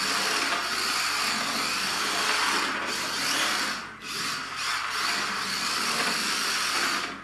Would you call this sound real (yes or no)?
yes